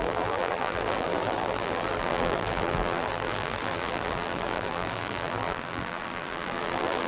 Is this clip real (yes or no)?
no